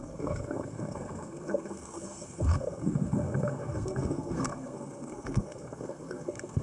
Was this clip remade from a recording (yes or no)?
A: yes